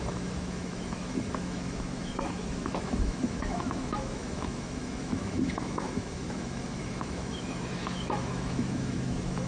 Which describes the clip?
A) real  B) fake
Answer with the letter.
B